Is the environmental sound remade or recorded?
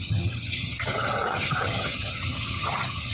remade